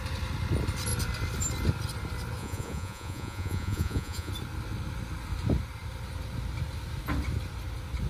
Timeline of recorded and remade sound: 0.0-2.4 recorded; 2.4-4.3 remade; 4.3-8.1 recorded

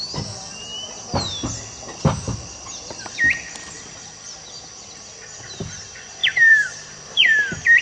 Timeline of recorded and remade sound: 0.0-0.7 remade; 0.7-5.4 recorded; 5.4-7.8 remade

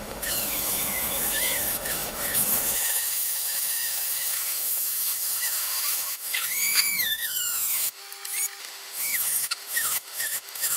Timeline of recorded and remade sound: 0.0-8.0 remade; 8.0-8.6 recorded; 8.6-10.8 remade